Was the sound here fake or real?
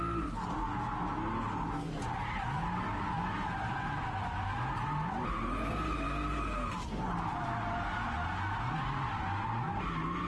real